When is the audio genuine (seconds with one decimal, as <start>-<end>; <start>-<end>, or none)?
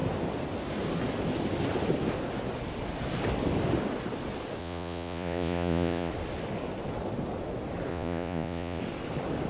0.0-4.6; 6.1-7.9; 8.8-9.5